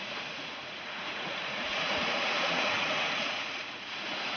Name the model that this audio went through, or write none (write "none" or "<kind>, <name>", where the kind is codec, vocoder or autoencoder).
vocoder, Vocos